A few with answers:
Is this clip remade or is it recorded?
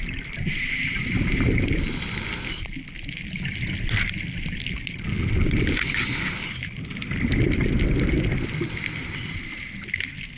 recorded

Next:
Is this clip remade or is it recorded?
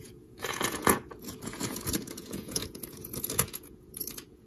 remade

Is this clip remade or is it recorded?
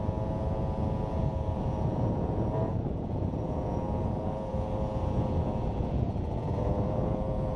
remade